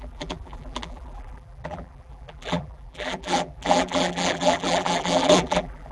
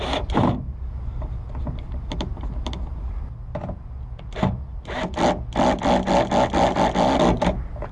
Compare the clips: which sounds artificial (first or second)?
first